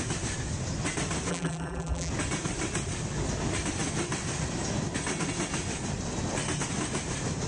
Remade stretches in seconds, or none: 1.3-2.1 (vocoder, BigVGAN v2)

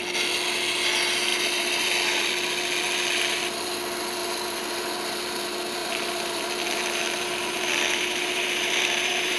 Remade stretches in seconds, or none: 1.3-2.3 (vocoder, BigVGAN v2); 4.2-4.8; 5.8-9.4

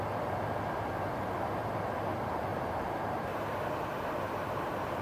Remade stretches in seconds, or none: 2.5-3.4 (vocoder, BigVGAN v2); 3.9-5.0